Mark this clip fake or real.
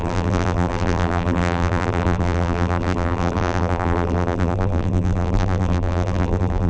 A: fake